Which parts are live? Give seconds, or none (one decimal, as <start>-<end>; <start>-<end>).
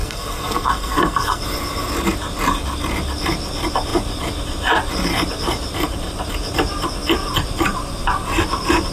1.4-8.9